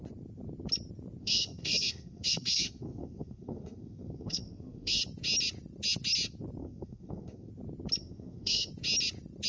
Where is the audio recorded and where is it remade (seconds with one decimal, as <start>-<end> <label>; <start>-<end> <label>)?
0.0-1.2 recorded; 1.2-5.0 remade; 5.0-6.6 recorded; 6.6-7.5 remade; 7.5-8.0 recorded; 8.0-8.7 remade; 8.7-9.5 recorded